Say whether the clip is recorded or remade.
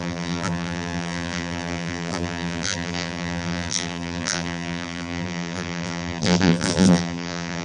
remade